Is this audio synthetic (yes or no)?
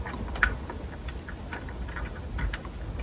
no